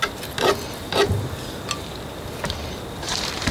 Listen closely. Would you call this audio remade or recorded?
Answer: recorded